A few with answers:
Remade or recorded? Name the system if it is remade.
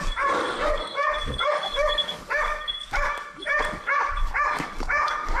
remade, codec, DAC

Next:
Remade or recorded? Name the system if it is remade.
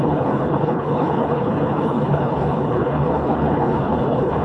remade, codec, HILCodec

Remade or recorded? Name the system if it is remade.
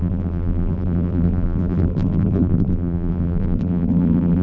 remade, vocoder, BigVGAN v2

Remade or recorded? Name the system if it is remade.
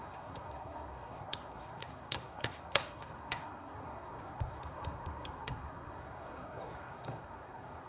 remade, codec, SNAC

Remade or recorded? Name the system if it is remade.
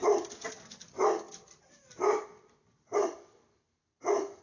recorded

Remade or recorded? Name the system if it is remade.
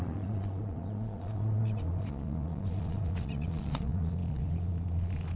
remade, vocoder, Vocos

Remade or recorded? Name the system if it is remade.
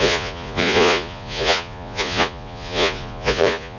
remade, vocoder, Vocos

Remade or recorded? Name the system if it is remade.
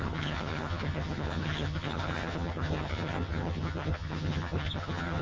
remade, vocoder, HiFi-GAN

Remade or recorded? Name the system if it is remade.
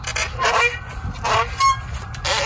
recorded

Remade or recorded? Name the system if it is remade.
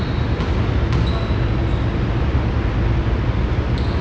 recorded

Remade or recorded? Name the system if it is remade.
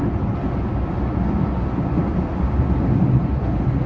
recorded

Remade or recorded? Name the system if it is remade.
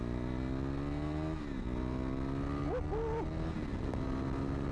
recorded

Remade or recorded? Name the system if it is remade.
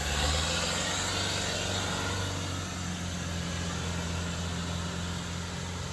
recorded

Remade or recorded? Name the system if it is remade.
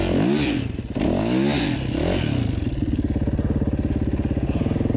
recorded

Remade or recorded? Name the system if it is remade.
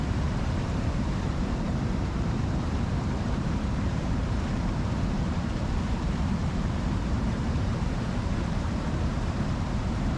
remade, vocoder, BigVGAN v2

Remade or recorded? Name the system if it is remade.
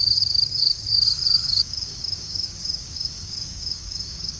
remade, codec, DAC